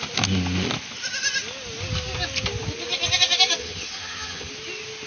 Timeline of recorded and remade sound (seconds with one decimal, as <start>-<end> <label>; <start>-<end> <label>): 0.0-3.6 recorded; 3.6-4.5 remade; 4.5-5.1 recorded